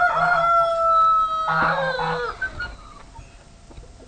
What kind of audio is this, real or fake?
real